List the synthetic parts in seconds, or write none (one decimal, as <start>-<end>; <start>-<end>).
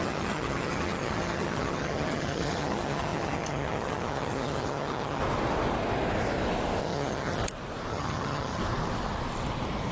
0.0-5.2; 6.8-7.4; 7.9-8.6